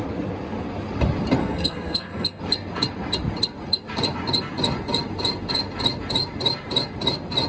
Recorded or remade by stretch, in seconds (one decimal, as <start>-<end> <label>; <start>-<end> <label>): 0.0-1.4 recorded; 1.4-2.4 remade; 2.4-7.5 recorded